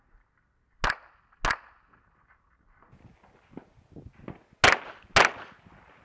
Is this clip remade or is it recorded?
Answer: recorded